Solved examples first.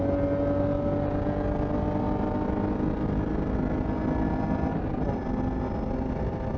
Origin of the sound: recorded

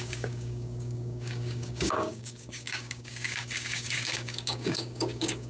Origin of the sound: remade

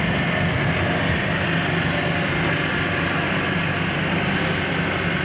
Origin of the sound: recorded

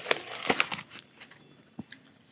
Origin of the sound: recorded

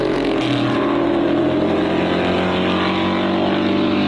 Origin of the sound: recorded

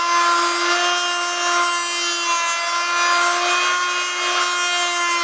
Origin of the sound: recorded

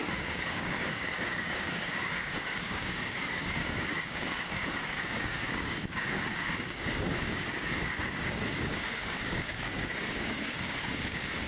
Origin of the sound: remade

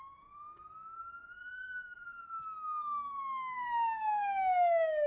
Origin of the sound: remade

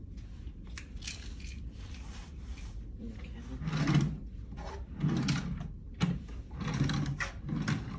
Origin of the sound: recorded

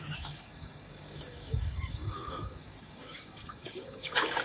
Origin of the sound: remade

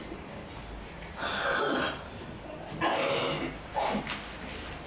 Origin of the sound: recorded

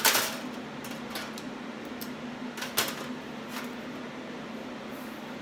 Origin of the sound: recorded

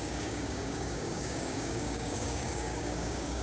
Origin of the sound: remade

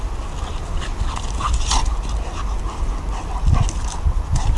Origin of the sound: recorded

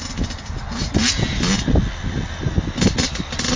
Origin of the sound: recorded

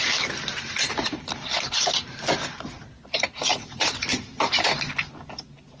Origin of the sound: recorded